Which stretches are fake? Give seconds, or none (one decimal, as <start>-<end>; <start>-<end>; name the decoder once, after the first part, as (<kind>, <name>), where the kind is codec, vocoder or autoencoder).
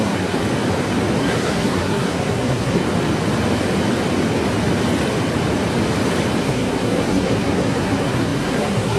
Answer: 0.0-0.4 (codec, SNAC); 1.2-2.8; 6.4-9.0